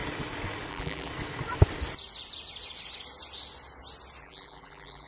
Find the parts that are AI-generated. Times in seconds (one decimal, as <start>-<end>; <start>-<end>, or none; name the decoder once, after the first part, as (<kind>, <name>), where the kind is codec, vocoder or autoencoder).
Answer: 0.7-1.1 (vocoder, BigVGAN v2); 4.2-5.1